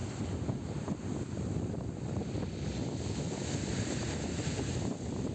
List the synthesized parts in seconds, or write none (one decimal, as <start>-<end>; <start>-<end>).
none